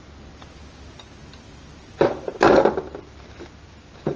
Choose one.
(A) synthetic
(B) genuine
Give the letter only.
B